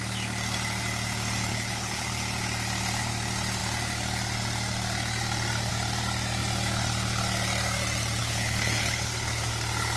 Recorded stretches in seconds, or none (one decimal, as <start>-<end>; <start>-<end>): 0.0-1.5; 2.1-8.2; 9.5-10.0